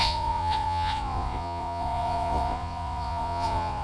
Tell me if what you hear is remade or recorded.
remade